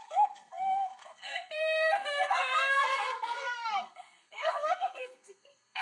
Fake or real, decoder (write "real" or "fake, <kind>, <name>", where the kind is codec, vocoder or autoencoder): fake, codec, SNAC